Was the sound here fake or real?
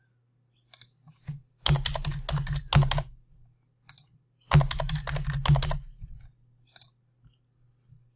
real